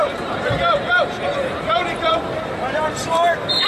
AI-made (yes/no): yes